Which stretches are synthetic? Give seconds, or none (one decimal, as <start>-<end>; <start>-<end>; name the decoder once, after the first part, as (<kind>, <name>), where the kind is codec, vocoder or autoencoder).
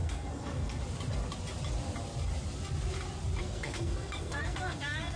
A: 0.0-0.8 (codec, SNAC); 3.4-5.2